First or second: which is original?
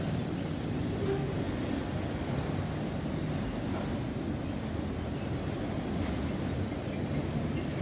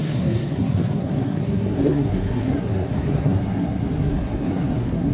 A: first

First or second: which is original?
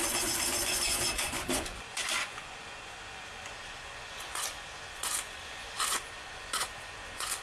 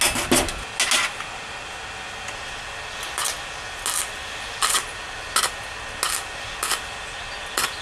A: second